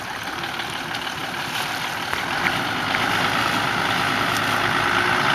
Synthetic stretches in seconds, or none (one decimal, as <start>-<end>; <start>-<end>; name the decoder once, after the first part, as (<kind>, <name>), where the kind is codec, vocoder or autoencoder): none